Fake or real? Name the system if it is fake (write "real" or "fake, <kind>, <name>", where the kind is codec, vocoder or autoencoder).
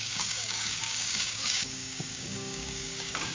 fake, codec, DAC